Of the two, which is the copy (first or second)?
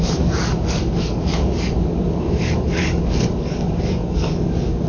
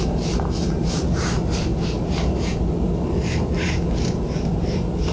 first